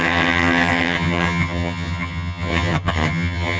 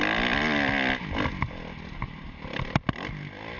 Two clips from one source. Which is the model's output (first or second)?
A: first